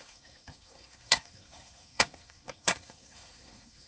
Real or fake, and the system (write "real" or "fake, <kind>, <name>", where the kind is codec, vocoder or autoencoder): fake, codec, SNAC